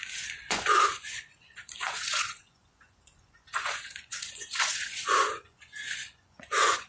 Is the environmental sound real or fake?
fake